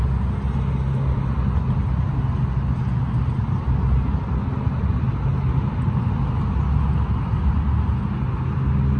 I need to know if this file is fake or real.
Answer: real